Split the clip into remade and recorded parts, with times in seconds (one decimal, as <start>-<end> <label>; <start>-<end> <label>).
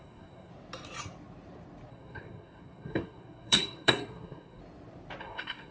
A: 0.0-0.5 remade; 0.5-1.9 recorded; 1.9-4.6 remade; 4.6-5.2 recorded; 5.2-5.7 remade